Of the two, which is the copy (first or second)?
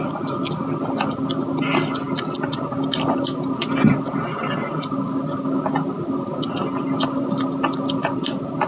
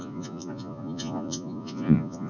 second